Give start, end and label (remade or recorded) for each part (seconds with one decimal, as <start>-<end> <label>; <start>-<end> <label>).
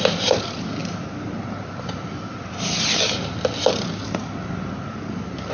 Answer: 0.0-5.5 recorded